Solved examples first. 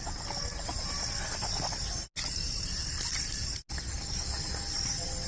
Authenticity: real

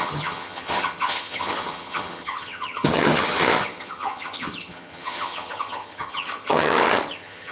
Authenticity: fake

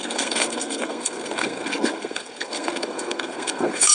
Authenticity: fake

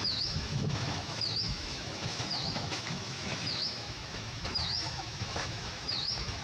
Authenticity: fake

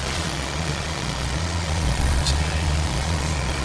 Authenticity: fake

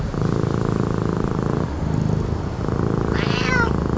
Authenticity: real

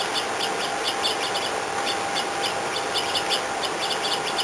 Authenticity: real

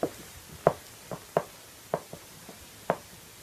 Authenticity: real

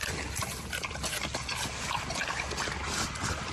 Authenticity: real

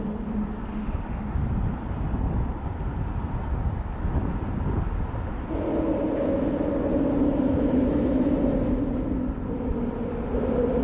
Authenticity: real